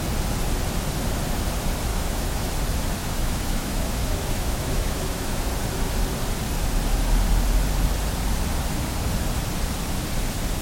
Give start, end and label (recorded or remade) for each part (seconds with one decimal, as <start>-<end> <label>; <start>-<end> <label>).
0.0-1.9 recorded; 1.9-2.5 remade; 2.5-3.0 recorded; 3.0-5.5 remade; 5.5-10.6 recorded